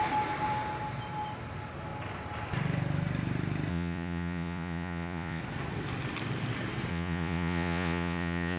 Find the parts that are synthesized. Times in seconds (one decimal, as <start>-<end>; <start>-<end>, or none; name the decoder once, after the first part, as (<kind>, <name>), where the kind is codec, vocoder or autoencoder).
3.7-5.4 (vocoder, Vocos); 6.9-8.6